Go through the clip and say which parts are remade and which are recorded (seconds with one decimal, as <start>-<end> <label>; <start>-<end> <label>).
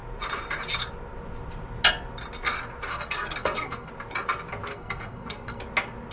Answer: 0.0-2.9 recorded; 2.9-3.9 remade; 3.9-4.7 recorded; 4.7-5.6 remade; 5.6-6.1 recorded